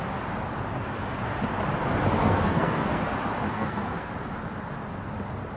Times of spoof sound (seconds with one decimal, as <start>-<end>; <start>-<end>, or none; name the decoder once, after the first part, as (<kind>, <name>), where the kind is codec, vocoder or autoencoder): 2.2-3.0 (codec, SNAC); 3.5-4.1